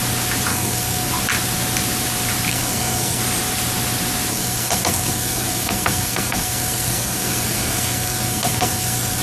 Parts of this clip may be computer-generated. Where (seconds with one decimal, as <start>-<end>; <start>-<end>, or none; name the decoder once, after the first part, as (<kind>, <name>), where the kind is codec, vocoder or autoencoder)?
0.5-1.1 (codec, SNAC); 2.5-3.2; 4.3-9.2